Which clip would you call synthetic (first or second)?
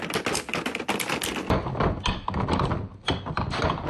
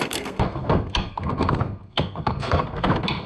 second